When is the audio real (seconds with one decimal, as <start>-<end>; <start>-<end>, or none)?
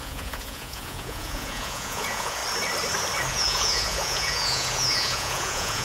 2.4-3.3